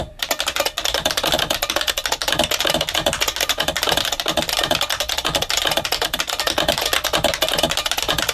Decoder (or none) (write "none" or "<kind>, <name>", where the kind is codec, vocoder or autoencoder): vocoder, BigVGAN v2